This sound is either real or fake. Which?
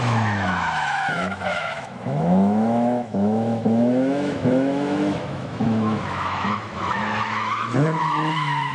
fake